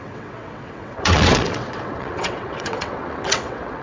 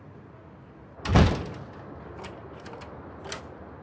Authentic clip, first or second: second